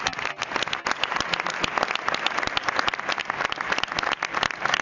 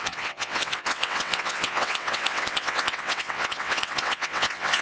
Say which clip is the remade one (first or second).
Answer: second